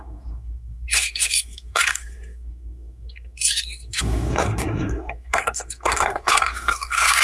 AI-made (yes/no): yes